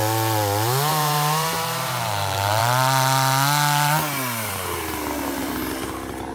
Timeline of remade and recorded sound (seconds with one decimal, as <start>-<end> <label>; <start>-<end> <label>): 0.0-0.9 recorded; 0.9-2.6 remade; 2.6-4.5 recorded; 4.5-6.3 remade